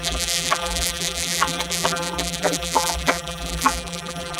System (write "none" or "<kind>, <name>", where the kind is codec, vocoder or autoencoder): vocoder, BigVGAN v2